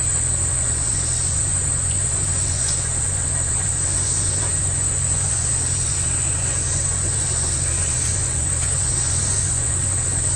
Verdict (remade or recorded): remade